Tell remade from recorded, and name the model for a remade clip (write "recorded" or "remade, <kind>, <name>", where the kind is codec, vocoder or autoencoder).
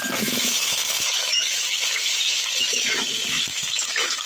remade, autoencoder, DAC-VAE